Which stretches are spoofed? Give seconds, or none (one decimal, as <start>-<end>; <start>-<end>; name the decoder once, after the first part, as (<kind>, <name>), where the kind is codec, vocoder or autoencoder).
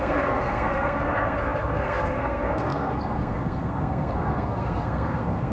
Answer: 0.0-5.5 (codec, SNAC)